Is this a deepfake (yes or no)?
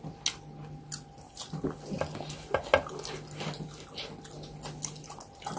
no